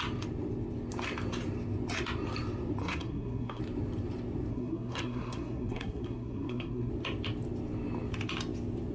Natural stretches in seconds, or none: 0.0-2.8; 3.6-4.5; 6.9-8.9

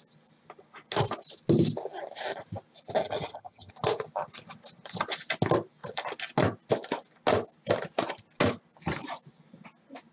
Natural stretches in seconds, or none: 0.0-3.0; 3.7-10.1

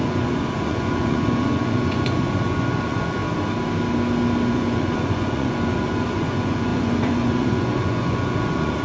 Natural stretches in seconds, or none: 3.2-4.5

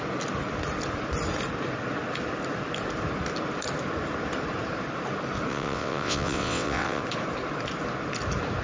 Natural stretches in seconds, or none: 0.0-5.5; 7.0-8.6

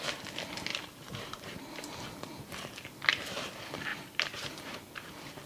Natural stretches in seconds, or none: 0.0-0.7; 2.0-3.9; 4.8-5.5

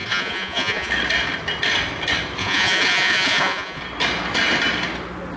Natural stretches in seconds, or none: 0.9-2.4; 3.8-5.4

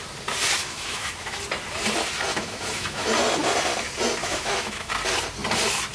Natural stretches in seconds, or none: 0.0-0.6; 1.4-2.3; 3.1-4.2; 4.9-5.9

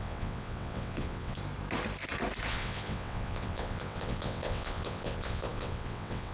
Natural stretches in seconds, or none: 1.4-2.5